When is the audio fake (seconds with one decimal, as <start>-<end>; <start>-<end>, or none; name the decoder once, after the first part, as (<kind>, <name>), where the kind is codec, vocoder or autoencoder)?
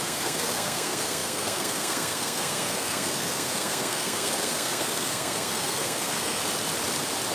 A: 0.0-6.4 (codec, SNAC)